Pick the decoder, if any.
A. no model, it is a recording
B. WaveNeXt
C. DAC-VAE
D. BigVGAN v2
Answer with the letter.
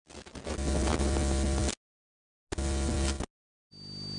A